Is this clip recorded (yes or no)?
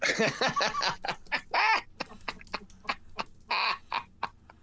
yes